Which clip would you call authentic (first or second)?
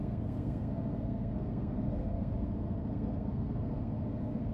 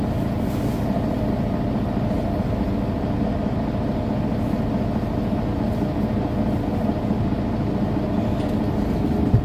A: second